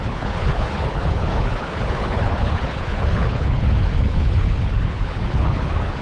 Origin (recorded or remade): remade